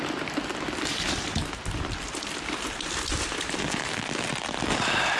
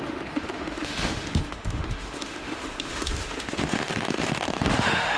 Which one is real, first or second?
first